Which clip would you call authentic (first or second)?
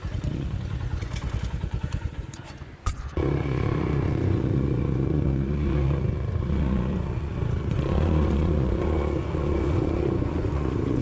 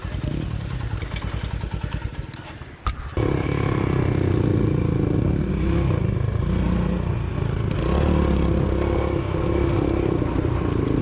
second